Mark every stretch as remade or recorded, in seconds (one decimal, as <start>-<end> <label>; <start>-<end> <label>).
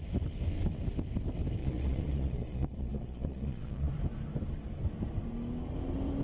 0.0-1.6 recorded; 1.6-3.9 remade; 3.9-6.2 recorded